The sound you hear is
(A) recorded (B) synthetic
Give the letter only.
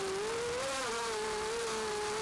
A